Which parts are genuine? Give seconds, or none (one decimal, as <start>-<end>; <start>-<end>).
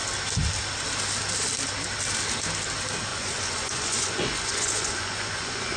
0.0-3.1